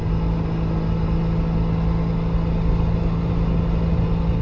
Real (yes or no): yes